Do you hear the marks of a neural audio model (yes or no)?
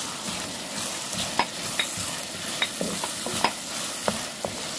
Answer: no